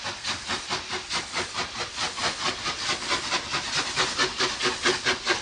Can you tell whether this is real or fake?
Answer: real